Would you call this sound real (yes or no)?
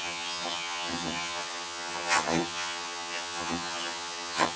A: no